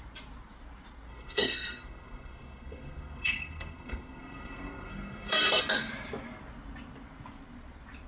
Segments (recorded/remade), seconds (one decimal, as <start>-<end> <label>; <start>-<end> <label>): 0.0-1.1 recorded; 1.1-5.6 remade; 5.6-8.1 recorded